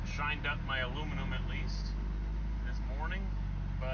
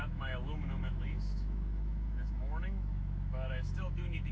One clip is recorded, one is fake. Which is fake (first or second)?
second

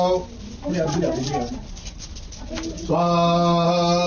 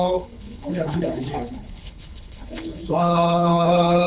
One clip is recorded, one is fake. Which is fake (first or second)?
second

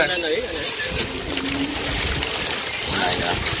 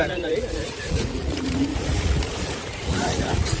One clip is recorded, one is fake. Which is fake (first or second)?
second